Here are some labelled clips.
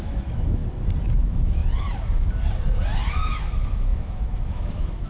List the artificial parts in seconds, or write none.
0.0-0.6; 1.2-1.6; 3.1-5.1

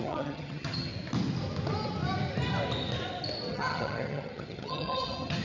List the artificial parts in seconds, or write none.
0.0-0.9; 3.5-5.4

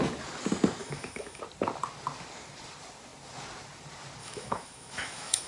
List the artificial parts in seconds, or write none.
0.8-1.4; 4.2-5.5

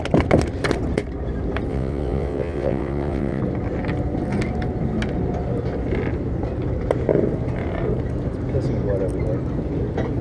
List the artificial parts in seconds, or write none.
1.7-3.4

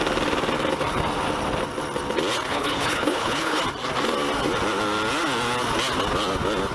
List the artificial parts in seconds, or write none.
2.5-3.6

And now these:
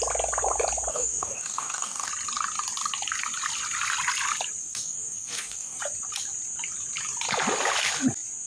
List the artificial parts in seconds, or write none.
0.9-2.1; 4.6-5.8

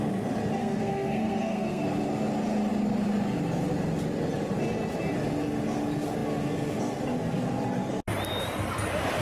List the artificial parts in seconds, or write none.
0.6-1.8